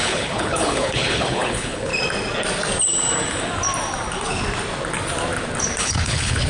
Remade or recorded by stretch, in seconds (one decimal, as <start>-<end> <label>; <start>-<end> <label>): 0.0-1.9 remade; 1.9-5.8 recorded; 5.8-6.5 remade